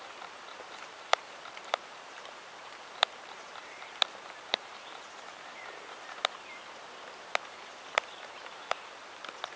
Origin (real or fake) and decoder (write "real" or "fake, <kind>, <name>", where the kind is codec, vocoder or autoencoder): fake, vocoder, BigVGAN v2